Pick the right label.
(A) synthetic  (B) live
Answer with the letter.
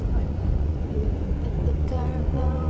A